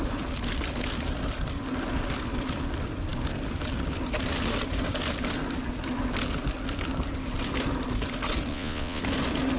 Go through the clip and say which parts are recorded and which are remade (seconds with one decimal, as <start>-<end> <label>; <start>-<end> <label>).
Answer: 0.0-8.5 recorded; 8.5-9.0 remade; 9.0-9.6 recorded